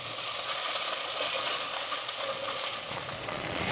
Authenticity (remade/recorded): remade